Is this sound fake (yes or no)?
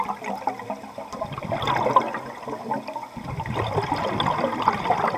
no